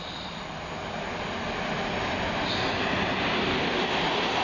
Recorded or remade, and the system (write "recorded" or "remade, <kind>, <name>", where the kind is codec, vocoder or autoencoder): recorded